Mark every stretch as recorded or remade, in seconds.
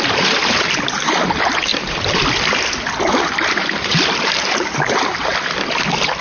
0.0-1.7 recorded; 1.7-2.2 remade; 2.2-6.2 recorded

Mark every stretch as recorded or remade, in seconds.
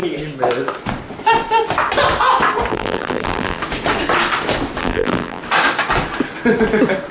0.0-2.7 recorded; 2.7-3.6 remade; 3.6-4.8 recorded; 4.8-5.4 remade; 5.4-7.1 recorded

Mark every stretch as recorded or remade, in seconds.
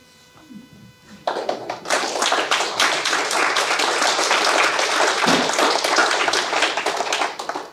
0.0-4.6 remade; 4.6-6.0 recorded; 6.0-6.8 remade; 6.8-7.7 recorded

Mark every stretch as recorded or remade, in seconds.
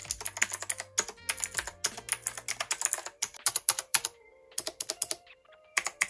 0.0-2.7 recorded; 2.7-6.1 remade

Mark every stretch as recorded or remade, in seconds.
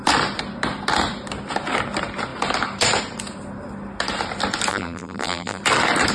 0.0-4.7 recorded; 4.7-5.6 remade; 5.6-6.1 recorded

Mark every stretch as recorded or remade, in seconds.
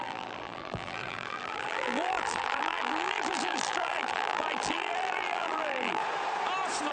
0.0-6.0 remade; 6.0-6.9 recorded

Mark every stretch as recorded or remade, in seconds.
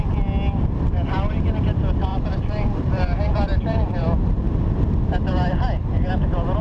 0.0-2.1 recorded; 2.1-6.1 remade; 6.1-6.6 recorded